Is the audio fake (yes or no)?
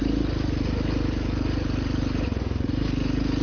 no